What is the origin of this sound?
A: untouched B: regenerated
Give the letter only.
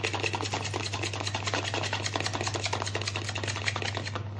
A